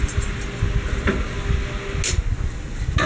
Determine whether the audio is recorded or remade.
recorded